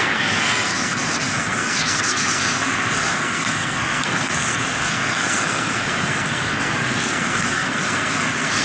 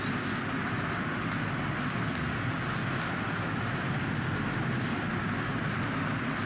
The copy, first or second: first